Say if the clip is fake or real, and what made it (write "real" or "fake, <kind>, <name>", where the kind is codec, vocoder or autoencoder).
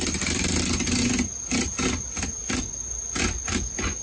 real